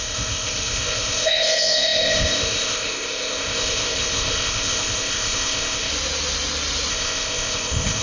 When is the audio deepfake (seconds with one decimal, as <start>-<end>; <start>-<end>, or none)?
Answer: 0.0-5.9; 6.9-8.0

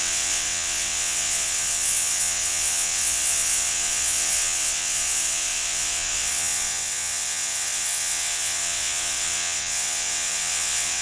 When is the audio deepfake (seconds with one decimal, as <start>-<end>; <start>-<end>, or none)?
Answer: 0.0-11.0

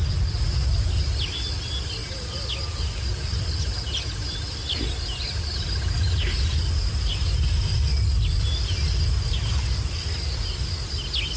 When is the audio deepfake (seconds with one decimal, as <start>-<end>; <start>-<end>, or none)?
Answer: none

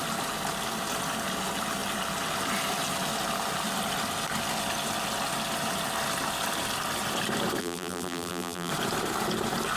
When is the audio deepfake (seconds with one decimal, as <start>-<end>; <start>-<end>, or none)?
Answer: 7.6-8.7